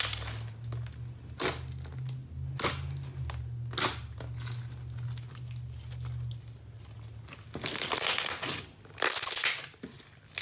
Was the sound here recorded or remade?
recorded